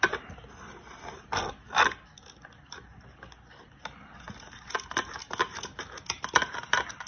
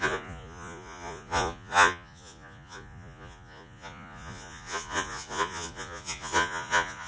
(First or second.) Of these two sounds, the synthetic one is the second